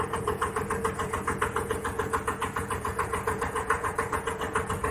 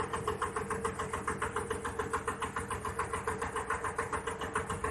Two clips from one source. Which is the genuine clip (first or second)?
second